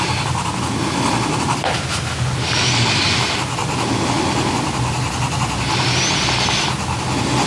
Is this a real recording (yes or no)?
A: yes